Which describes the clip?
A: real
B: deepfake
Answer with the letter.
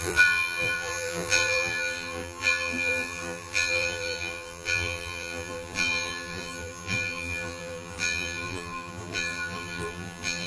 B